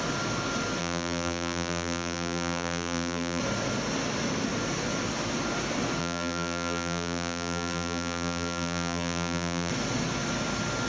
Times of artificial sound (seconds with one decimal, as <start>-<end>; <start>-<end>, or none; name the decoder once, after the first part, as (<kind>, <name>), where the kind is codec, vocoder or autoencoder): 0.8-3.4 (vocoder, BigVGAN v2); 6.0-9.7